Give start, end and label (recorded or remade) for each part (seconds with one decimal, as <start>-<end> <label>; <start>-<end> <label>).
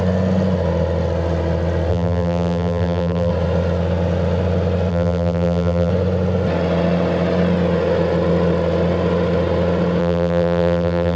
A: 0.0-1.9 recorded; 1.9-3.3 remade; 3.3-4.9 recorded; 4.9-5.9 remade; 5.9-10.0 recorded; 10.0-11.2 remade